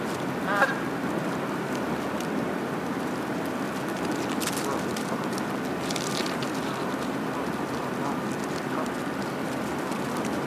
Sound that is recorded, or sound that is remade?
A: recorded